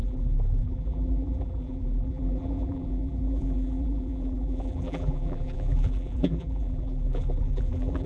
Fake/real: fake